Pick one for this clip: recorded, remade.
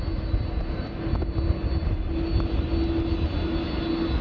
recorded